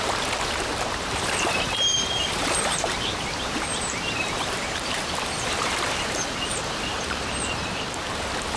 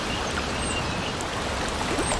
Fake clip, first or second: first